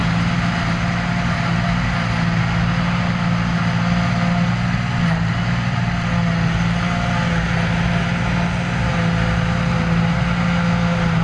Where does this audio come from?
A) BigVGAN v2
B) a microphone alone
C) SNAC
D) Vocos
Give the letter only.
B